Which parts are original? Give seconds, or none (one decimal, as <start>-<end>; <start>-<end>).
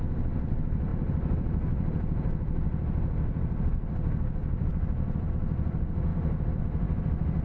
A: 0.0-0.9; 5.3-6.1; 6.6-7.4